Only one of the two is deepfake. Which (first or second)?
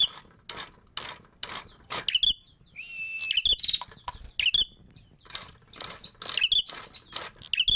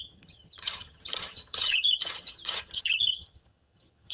second